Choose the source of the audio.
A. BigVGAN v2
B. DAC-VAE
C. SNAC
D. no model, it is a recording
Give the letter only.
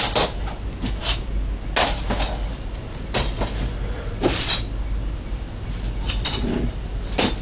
D